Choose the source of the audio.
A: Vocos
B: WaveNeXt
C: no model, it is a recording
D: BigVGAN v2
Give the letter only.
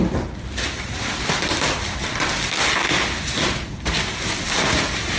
C